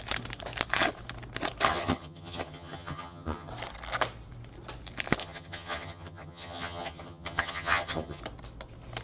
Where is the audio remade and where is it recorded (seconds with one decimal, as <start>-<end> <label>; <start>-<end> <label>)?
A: 0.0-1.7 recorded; 1.7-3.5 remade; 3.5-5.2 recorded; 5.2-8.2 remade; 8.2-9.0 recorded